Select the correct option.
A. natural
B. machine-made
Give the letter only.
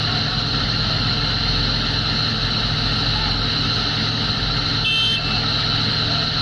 A